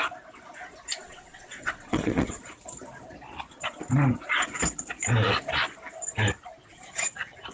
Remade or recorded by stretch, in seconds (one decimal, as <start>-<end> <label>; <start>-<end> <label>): 0.0-1.0 recorded; 1.0-2.4 remade; 2.4-7.5 recorded